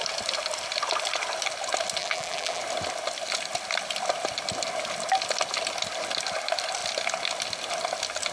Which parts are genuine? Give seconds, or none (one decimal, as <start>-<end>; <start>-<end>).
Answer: 0.0-2.0; 2.6-8.3